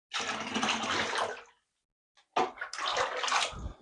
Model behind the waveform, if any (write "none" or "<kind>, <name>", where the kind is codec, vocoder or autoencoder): none